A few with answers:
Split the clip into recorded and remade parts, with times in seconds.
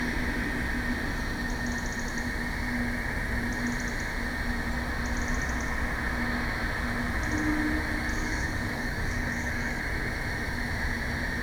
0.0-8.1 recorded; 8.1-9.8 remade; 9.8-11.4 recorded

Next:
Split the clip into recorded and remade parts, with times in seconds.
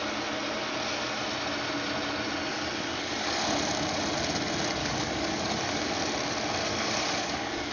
0.0-2.5 recorded; 2.5-3.4 remade; 3.4-4.8 recorded; 4.8-5.9 remade; 5.9-6.7 recorded; 6.7-7.7 remade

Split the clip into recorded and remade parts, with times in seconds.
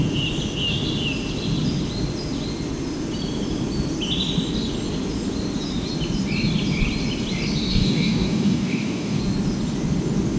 0.0-7.7 recorded; 7.7-9.2 remade; 9.2-10.4 recorded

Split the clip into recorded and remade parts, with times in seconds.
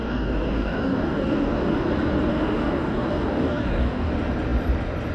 0.0-1.9 remade; 1.9-2.3 recorded; 2.3-4.1 remade; 4.1-5.1 recorded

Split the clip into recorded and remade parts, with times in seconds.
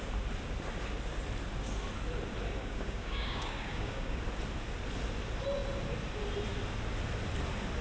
0.0-2.6 recorded; 2.6-4.2 remade; 4.2-7.8 recorded